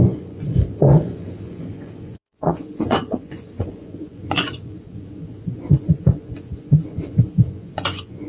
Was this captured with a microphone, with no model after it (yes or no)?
no